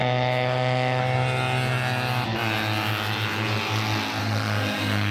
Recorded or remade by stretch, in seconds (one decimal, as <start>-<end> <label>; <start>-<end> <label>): 0.0-1.0 remade; 1.0-4.2 recorded; 4.2-5.1 remade